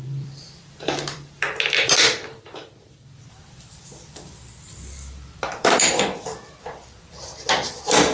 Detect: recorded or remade remade